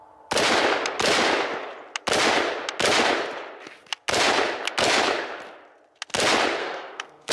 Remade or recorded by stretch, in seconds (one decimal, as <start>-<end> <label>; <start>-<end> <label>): 0.0-6.6 recorded; 6.6-7.3 remade

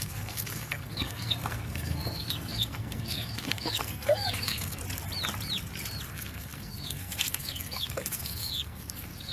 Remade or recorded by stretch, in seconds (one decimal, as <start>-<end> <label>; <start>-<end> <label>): 0.0-4.8 remade; 4.8-6.1 recorded; 6.1-9.3 remade

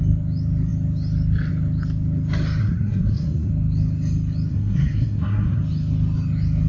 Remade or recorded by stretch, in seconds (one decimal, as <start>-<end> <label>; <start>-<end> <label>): 0.0-2.6 recorded; 2.6-3.5 remade; 3.5-4.5 recorded; 4.5-5.6 remade; 5.6-6.7 recorded

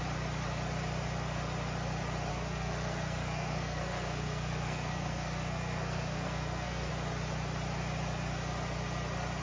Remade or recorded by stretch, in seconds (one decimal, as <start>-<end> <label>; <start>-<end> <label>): 0.0-2.3 recorded; 2.3-6.9 remade; 6.9-9.4 recorded

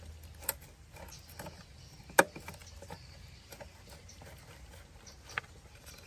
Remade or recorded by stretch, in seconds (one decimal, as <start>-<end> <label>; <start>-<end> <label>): 0.0-6.1 recorded

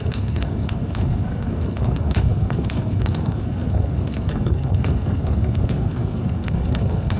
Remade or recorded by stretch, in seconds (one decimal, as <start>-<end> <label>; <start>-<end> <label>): 0.0-7.2 remade

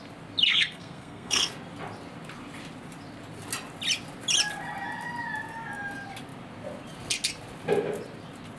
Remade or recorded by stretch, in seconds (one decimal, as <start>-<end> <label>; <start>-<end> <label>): 0.0-0.5 recorded; 0.5-1.5 remade; 1.5-8.6 recorded

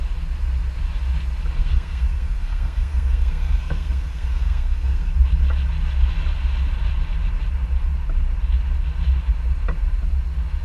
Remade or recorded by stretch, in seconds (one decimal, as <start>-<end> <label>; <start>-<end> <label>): 0.0-1.6 recorded; 1.6-5.1 remade; 5.1-10.6 recorded